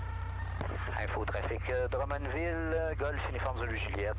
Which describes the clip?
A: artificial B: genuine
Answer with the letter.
B